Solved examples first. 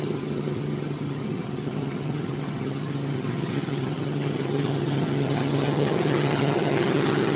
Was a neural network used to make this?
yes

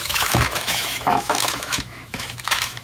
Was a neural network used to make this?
yes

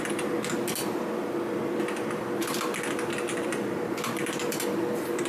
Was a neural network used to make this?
no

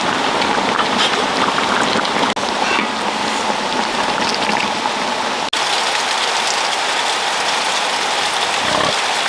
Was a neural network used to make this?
no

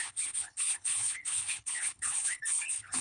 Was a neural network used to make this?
yes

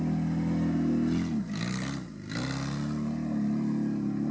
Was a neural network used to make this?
no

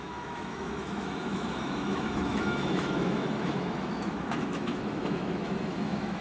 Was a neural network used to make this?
yes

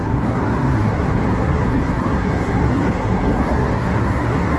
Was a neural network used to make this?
yes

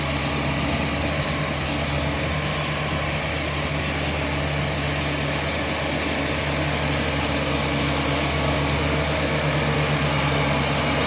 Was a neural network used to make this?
no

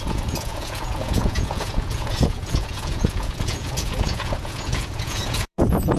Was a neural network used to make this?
yes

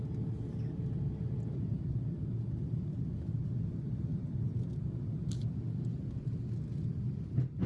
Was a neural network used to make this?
no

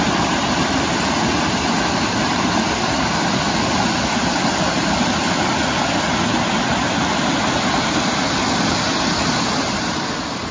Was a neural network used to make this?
no